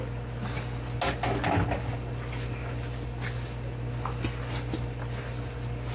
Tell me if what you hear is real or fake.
real